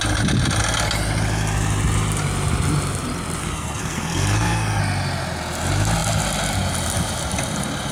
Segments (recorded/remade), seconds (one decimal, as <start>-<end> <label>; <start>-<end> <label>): 0.0-3.4 recorded; 3.4-4.8 remade; 4.8-7.9 recorded